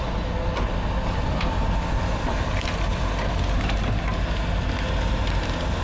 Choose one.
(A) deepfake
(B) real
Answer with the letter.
B